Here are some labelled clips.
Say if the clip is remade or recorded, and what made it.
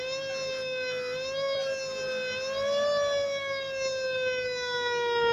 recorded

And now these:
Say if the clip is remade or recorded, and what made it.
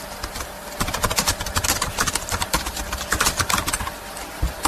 recorded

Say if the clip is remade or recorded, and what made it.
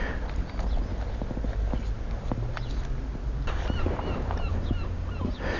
recorded